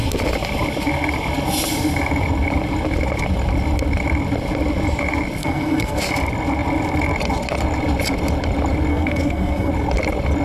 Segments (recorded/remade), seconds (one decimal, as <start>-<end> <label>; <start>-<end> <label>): 0.0-5.4 recorded; 5.4-6.0 remade; 6.0-8.9 recorded; 8.9-9.7 remade; 9.7-10.4 recorded